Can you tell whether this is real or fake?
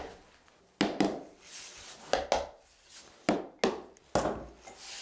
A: real